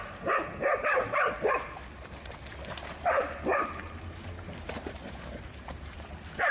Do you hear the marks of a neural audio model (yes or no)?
no